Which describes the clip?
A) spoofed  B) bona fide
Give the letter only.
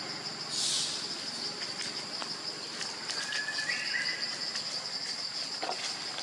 B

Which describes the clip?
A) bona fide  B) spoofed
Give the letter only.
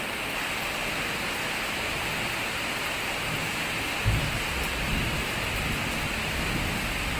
A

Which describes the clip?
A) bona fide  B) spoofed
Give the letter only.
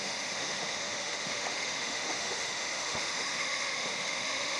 B